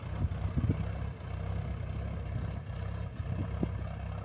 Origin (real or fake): real